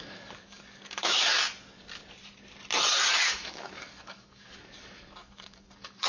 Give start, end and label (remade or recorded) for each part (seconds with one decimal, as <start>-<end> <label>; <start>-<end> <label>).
0.0-1.3 remade; 1.3-3.2 recorded; 3.2-6.1 remade